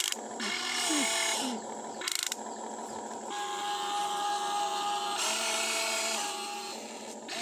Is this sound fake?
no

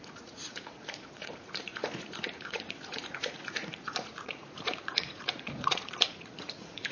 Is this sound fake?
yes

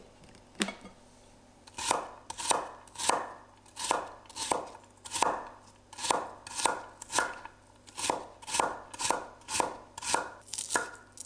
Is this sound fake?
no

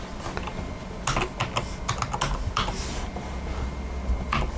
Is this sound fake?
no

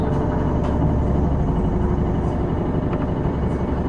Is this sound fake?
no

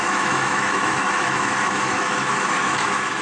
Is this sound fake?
yes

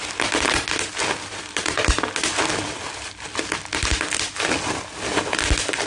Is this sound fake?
no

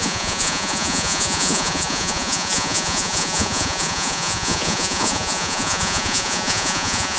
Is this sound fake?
yes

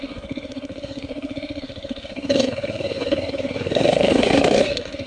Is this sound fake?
yes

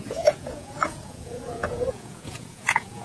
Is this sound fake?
yes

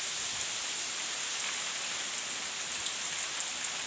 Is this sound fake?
no